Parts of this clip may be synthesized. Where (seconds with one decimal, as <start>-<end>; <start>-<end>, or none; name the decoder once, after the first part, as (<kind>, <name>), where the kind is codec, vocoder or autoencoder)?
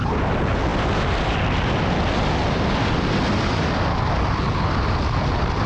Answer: none